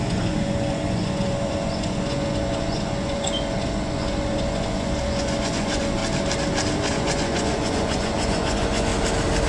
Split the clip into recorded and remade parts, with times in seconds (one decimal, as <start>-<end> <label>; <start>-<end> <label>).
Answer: 0.0-6.0 remade; 6.0-6.9 recorded; 6.9-8.9 remade; 8.9-9.5 recorded